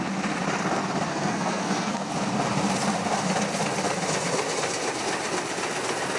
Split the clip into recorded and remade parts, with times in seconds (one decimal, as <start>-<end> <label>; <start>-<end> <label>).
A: 0.0-1.1 recorded; 1.1-2.1 remade; 2.1-6.2 recorded